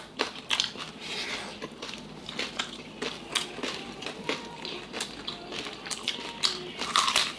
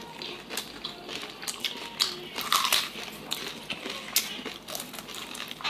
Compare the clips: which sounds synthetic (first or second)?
first